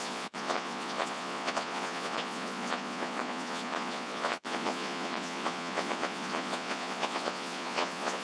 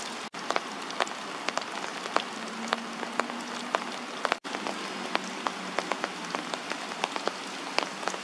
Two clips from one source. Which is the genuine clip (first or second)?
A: second